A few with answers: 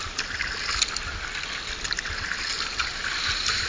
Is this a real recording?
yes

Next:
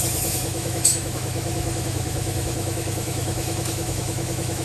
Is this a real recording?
no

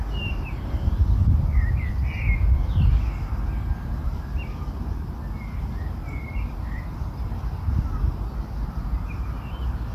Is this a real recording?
yes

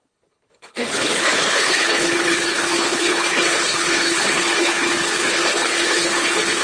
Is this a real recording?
no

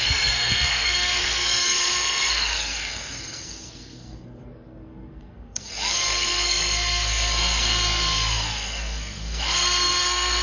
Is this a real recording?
no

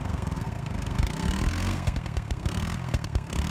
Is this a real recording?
no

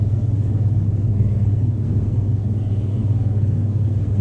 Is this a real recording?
no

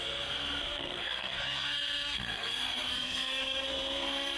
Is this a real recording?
no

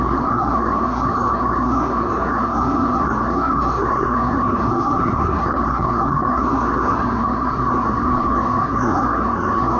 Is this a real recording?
no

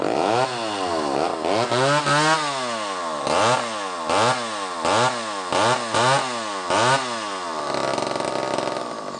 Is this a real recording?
yes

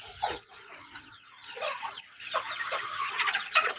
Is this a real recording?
no